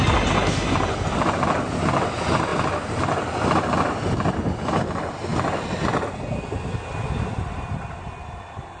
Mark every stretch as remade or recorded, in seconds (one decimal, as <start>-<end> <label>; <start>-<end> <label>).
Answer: 0.0-8.8 recorded